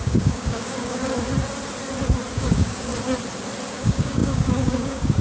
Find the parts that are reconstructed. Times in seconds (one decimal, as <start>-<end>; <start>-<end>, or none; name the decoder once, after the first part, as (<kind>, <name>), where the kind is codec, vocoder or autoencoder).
0.0-1.0 (codec, DAC); 2.3-2.9; 3.7-5.2